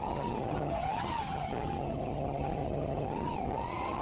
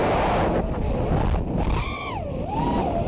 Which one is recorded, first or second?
second